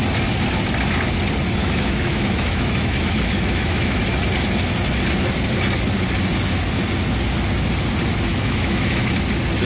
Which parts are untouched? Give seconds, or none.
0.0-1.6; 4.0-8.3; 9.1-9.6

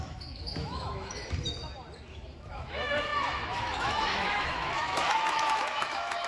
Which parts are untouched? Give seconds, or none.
1.2-2.1

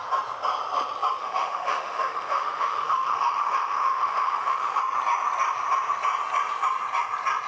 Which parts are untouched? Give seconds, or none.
0.0-1.2; 4.8-7.5

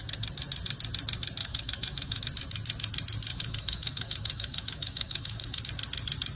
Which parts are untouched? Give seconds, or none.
0.0-1.4; 2.2-3.3; 5.6-6.4